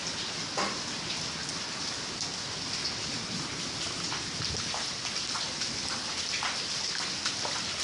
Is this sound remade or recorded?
recorded